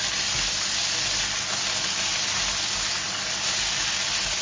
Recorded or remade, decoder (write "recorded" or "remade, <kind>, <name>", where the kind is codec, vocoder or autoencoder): recorded